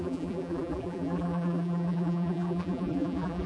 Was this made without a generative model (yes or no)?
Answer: no